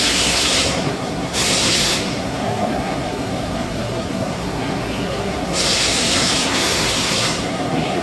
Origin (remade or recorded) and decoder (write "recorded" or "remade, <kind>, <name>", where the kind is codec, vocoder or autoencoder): remade, codec, SNAC